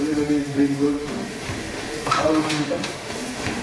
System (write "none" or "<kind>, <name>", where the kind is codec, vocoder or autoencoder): autoencoder, DAC-VAE